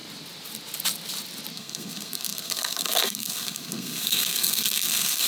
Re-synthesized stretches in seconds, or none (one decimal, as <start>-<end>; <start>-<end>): 1.5-5.3